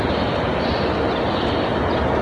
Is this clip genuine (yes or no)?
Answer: yes